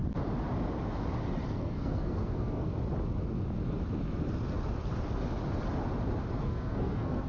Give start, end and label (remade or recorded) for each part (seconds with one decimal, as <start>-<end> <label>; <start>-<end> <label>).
0.0-1.5 recorded; 1.5-2.7 remade; 2.7-6.4 recorded; 6.4-7.3 remade